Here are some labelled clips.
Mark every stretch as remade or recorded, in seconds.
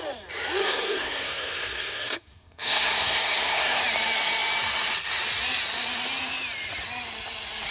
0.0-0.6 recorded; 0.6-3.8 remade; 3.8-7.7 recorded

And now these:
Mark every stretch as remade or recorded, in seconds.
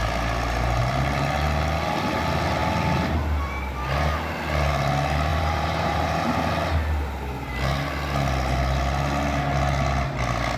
0.0-0.8 remade; 0.8-5.3 recorded; 5.3-6.5 remade; 6.5-10.6 recorded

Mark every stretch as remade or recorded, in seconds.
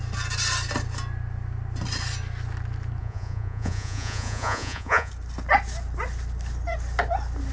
0.0-3.0 recorded; 3.0-5.1 remade; 5.1-7.5 recorded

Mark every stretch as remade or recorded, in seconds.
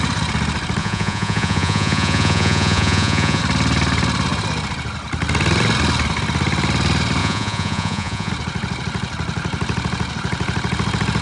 0.0-0.8 recorded; 0.8-3.4 remade; 3.4-7.2 recorded; 7.2-8.3 remade; 8.3-11.2 recorded